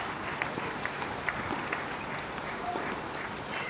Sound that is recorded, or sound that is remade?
recorded